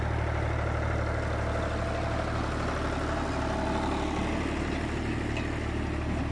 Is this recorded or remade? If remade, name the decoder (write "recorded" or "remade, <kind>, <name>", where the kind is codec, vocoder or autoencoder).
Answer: recorded